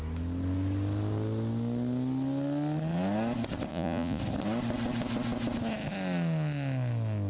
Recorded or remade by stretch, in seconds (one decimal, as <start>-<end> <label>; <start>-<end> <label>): 0.0-3.7 recorded; 3.7-4.2 remade; 4.2-7.3 recorded